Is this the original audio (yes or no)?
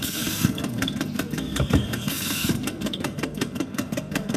no